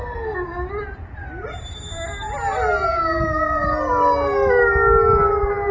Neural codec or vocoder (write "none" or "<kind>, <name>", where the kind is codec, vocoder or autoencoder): none